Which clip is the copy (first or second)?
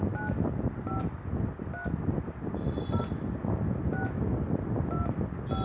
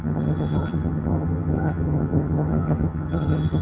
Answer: second